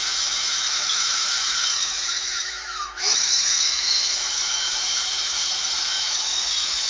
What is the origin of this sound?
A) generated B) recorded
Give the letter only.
A